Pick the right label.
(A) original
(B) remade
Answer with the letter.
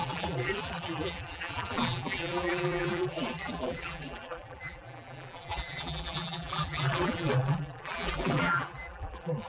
B